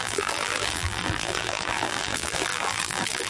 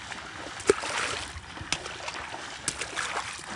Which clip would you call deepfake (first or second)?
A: first